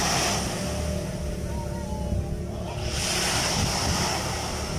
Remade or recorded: recorded